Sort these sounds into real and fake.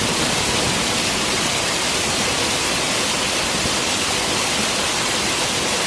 real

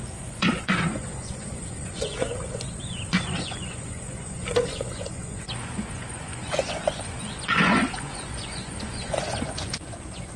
fake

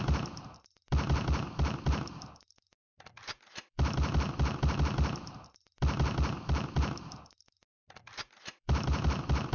fake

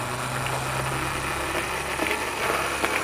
real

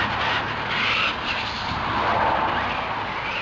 real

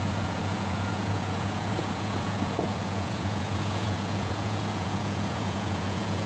fake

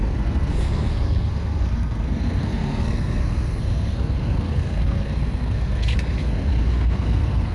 fake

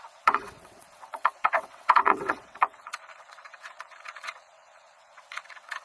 fake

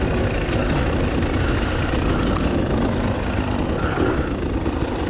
real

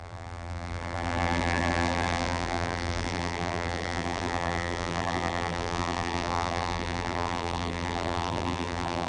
fake